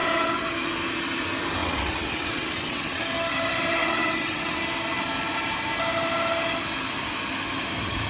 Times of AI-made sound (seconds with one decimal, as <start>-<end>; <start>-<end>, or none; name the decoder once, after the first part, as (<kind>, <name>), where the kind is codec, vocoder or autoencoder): 0.0-0.5 (vocoder, WaveNeXt); 1.6-3.0; 3.8-4.6